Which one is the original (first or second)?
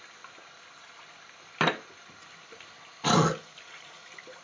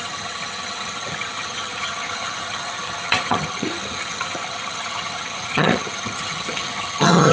first